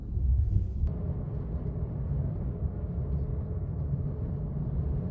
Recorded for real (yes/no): yes